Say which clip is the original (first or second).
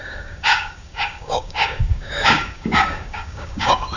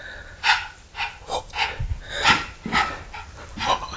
second